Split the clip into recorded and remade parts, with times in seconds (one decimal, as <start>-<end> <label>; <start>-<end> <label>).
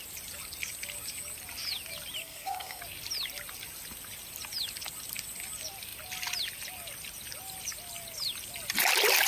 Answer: 0.0-2.2 recorded; 2.2-2.8 remade; 2.8-9.3 recorded